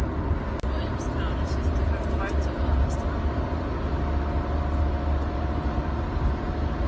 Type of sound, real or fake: real